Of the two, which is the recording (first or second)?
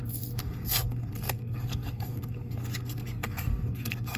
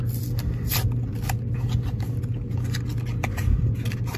second